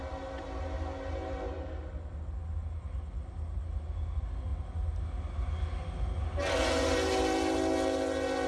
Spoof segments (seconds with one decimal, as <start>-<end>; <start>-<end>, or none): none